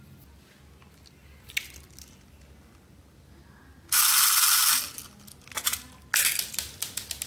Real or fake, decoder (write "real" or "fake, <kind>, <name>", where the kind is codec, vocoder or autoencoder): real